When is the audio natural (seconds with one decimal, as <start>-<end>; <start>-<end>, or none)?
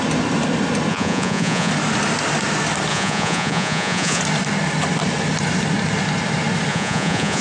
0.0-0.9; 1.7-2.9; 4.2-6.7